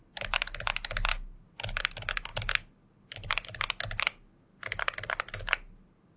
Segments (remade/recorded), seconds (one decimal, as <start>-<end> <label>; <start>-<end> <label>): 0.0-6.2 recorded